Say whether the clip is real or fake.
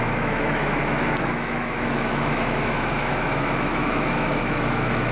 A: fake